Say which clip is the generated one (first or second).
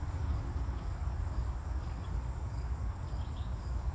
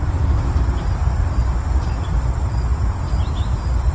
first